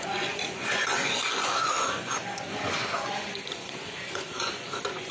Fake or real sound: fake